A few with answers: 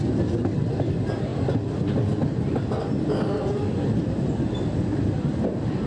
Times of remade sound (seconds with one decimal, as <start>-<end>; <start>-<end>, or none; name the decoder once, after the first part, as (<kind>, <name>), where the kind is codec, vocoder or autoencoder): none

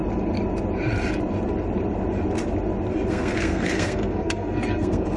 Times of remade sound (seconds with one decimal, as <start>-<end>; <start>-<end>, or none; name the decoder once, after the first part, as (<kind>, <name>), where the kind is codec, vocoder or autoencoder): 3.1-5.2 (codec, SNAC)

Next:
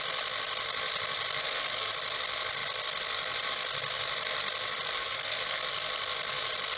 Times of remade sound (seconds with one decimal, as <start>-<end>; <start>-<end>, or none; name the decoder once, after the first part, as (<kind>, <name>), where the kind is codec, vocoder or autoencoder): 1.4-1.9 (codec, SNAC); 4.8-5.6

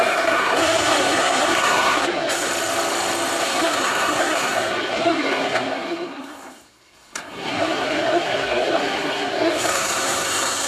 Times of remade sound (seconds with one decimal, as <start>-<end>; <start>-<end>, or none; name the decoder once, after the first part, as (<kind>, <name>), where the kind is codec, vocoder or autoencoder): 0.0-2.5 (codec, SNAC); 3.4-10.7

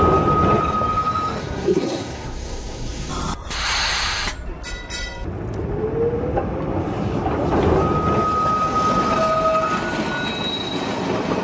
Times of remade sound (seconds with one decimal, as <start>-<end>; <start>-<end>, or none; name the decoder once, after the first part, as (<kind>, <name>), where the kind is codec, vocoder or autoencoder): 1.4-3.1 (codec, SNAC)

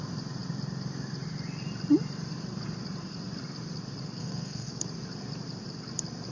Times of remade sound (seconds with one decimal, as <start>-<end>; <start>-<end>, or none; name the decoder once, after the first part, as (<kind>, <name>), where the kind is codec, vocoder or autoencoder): 4.2-4.7 (codec, SNAC)

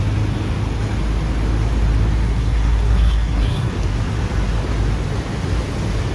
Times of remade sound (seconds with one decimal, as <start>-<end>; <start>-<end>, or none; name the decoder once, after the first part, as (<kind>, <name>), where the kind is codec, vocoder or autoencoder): 2.2-3.7 (codec, SNAC)

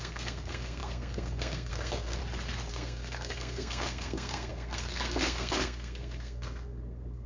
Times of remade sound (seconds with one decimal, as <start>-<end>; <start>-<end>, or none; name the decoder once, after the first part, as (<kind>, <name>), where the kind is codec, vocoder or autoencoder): 0.0-2.2 (codec, SNAC); 2.7-7.3